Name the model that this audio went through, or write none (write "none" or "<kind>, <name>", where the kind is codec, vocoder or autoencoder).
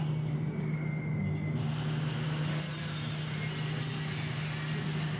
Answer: none